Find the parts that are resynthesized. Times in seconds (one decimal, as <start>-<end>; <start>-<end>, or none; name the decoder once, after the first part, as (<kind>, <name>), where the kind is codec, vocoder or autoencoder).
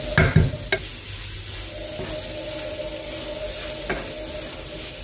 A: none